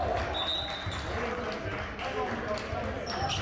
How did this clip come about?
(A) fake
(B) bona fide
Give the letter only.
B